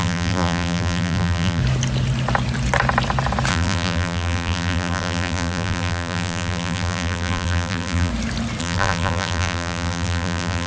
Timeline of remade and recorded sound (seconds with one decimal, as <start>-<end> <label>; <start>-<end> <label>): 0.0-1.6 remade; 1.6-3.5 recorded; 3.5-8.1 remade; 8.1-8.6 recorded; 8.6-10.7 remade